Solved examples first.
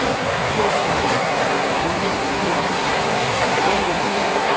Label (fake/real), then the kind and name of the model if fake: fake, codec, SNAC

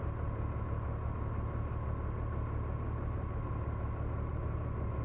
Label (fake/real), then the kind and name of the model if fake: real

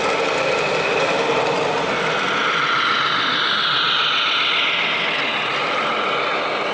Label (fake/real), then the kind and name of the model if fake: real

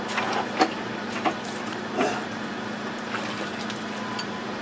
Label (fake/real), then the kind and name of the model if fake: fake, vocoder, BigVGAN v2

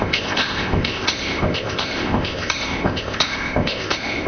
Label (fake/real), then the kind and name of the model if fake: fake, codec, ZipCodec